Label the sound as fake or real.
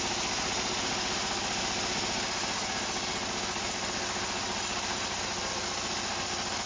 real